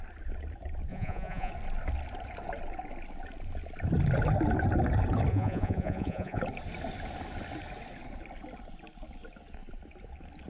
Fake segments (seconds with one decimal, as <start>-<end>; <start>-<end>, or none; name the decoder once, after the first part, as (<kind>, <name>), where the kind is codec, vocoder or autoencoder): 0.9-1.5 (vocoder, Vocos); 5.3-6.4